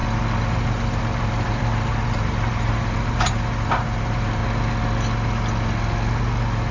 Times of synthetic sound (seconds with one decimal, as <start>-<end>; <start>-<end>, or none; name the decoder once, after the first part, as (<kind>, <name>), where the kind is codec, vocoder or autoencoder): 0.5-4.4 (vocoder, BigVGAN v2)